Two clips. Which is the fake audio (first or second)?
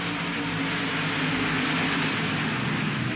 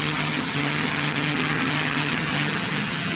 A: second